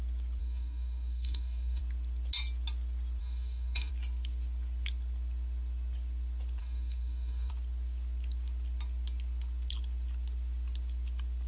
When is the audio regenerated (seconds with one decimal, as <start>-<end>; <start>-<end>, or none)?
0.4-1.8; 3.2-3.9; 6.6-7.5